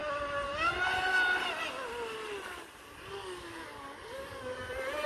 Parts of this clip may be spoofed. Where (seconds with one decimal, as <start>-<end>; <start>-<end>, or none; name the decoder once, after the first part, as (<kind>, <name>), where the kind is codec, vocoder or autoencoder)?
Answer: 3.1-4.6 (codec, DAC)